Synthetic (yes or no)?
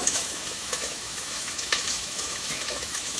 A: yes